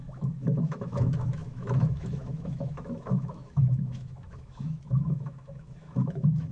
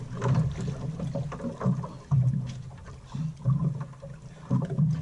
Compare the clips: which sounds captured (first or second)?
second